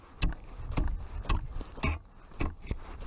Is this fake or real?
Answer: real